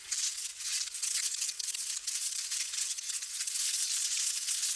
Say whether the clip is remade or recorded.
remade